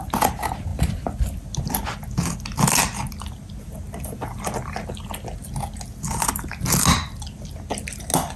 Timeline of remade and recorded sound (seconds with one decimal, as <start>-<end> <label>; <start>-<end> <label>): 0.0-8.4 recorded